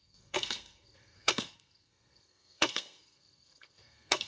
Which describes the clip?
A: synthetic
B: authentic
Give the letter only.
A